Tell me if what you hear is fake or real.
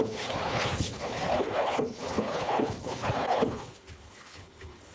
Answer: fake